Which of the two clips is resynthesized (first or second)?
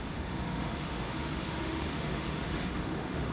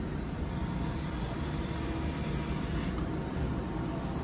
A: first